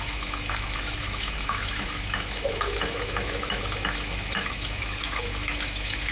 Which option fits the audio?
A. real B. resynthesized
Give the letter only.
B